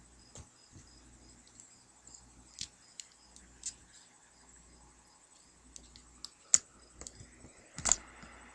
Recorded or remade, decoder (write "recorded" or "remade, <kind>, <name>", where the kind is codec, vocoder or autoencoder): recorded